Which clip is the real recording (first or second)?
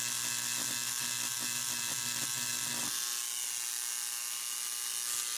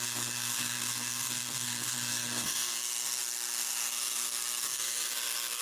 first